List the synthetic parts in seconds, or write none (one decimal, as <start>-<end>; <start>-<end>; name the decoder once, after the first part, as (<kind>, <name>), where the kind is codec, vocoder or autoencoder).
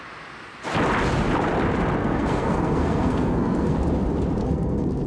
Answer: 2.0-3.8 (codec, SNAC); 4.4-5.1